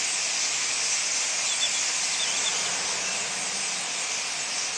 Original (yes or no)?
yes